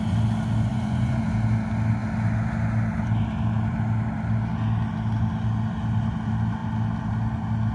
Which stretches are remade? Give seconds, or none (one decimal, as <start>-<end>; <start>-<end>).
0.7-1.2